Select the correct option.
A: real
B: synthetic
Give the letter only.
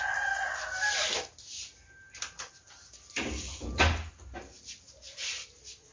A